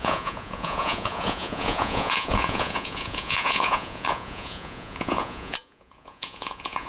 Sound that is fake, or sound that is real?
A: fake